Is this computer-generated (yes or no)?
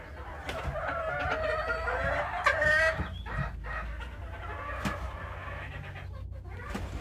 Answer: no